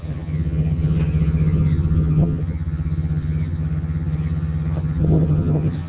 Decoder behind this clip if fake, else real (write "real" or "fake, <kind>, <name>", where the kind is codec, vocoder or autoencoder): fake, vocoder, HiFi-GAN